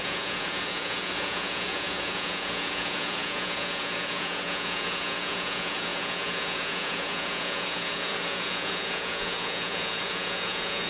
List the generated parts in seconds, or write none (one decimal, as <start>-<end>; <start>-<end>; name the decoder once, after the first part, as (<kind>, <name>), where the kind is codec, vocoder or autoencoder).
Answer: 0.0-10.9 (vocoder, Vocos)